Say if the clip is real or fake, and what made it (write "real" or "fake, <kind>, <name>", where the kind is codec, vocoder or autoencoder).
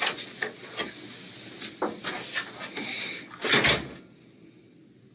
real